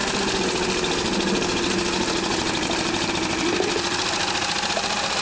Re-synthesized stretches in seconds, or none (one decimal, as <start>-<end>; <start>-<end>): none